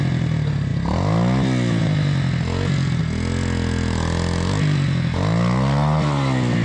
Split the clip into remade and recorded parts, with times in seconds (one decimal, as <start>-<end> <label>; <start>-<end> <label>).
0.0-6.6 recorded